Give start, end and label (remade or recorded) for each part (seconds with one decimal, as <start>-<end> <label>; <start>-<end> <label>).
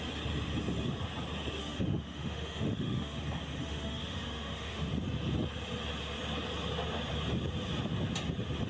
0.0-1.6 recorded; 1.6-3.2 remade; 3.2-3.6 recorded; 3.6-4.9 remade; 4.9-8.7 recorded